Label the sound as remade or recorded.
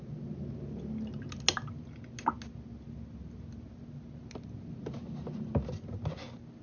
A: recorded